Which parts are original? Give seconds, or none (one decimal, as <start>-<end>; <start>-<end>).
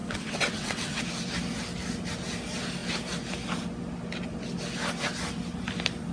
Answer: 1.0-6.1